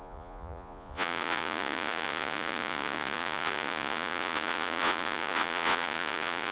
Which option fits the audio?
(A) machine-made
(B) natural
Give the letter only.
A